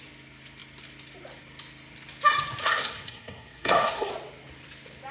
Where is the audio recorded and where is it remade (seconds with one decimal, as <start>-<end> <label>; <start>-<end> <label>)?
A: 0.0-2.6 recorded; 2.6-4.1 remade; 4.1-5.1 recorded